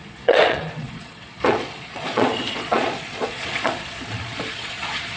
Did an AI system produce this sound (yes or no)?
yes